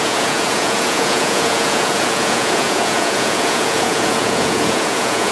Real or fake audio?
fake